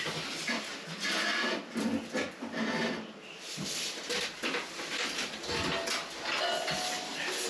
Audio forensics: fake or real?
real